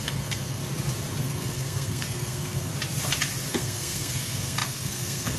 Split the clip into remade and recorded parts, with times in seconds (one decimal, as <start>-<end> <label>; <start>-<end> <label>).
0.0-0.6 remade; 0.6-1.2 recorded; 1.2-2.7 remade; 2.7-3.5 recorded; 3.5-5.4 remade